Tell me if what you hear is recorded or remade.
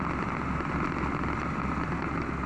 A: recorded